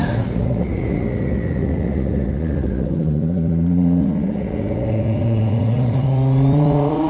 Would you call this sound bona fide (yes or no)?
no